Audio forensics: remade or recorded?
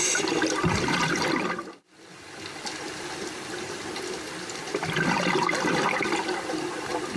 recorded